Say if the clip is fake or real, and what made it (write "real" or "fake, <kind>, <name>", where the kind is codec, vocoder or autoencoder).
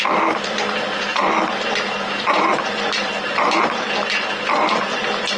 real